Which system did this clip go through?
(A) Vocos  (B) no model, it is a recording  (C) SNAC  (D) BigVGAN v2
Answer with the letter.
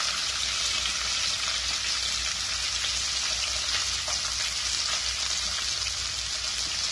B